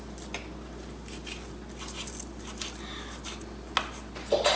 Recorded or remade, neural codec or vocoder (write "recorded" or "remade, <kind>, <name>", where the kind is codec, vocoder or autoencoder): recorded